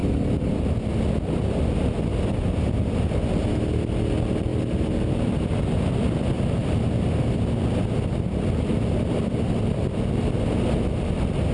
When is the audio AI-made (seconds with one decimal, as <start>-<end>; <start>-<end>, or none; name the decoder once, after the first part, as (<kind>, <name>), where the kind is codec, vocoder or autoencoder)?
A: 0.0-0.6 (vocoder, BigVGAN v2); 4.5-5.1